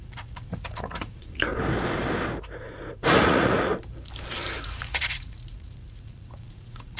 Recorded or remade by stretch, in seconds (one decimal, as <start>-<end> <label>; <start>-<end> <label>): 0.0-1.5 remade; 1.5-2.4 recorded; 2.4-3.7 remade; 3.7-4.6 recorded; 4.6-7.0 remade